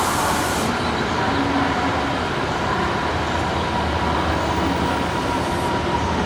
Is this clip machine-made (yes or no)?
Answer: no